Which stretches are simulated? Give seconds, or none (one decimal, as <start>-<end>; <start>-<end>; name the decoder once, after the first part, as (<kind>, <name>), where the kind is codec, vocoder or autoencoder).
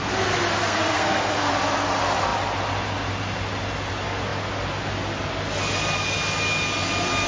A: 0.6-1.5 (codec, SNAC)